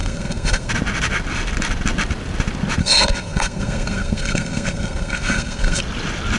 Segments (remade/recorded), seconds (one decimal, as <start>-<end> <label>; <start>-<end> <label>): 0.0-0.7 remade; 0.7-2.8 recorded; 2.8-5.8 remade; 5.8-6.4 recorded